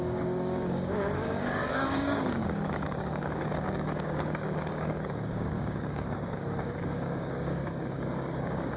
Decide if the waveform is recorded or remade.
remade